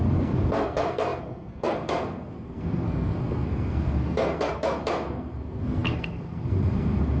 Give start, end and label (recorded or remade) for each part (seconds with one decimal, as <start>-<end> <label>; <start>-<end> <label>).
0.0-7.2 remade